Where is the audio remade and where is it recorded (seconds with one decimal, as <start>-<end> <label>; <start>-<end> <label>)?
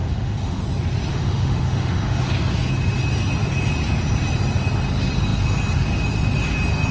0.0-0.6 remade; 0.6-1.1 recorded; 1.1-2.2 remade; 2.2-6.9 recorded